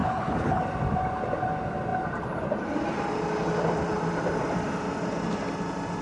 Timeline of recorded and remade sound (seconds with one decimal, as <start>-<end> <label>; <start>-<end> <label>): 0.0-0.6 remade; 0.6-6.0 recorded